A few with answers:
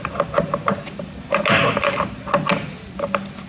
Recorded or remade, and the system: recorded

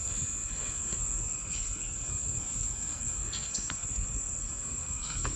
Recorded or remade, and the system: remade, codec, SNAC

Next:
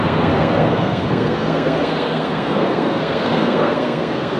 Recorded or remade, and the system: remade, codec, SNAC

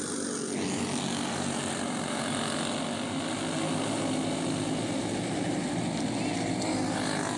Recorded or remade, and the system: recorded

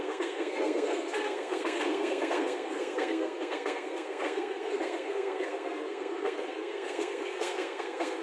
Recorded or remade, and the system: remade, codec, SNAC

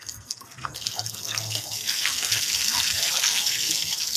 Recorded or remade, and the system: remade, codec, SNAC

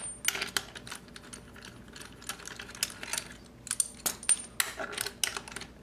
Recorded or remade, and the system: recorded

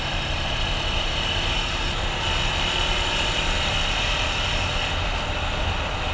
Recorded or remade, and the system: recorded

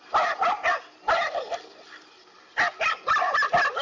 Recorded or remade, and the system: recorded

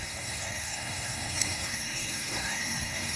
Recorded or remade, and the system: remade, codec, SNAC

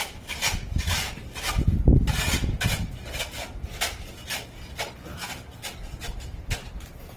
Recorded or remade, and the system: recorded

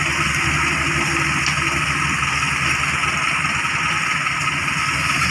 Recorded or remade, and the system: recorded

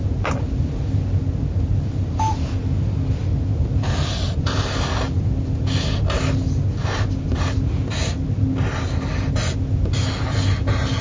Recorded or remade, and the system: recorded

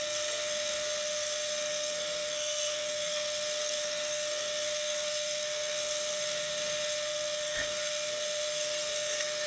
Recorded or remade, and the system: remade, codec, SNAC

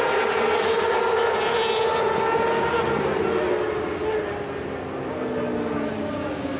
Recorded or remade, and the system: recorded